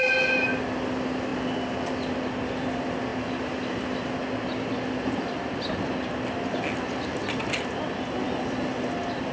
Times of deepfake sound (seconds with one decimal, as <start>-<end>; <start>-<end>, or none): none